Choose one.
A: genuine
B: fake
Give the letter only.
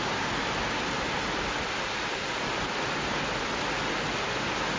A